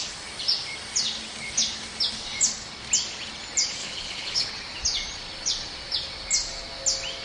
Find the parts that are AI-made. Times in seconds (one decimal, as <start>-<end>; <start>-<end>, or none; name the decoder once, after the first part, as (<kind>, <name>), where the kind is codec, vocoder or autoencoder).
3.8-4.5 (codec, HILCodec)